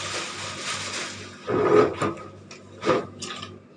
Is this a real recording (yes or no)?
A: yes